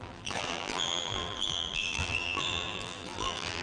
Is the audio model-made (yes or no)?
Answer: yes